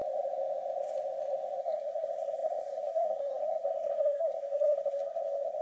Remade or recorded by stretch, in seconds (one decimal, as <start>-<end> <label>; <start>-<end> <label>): 0.0-1.6 recorded; 1.6-5.6 remade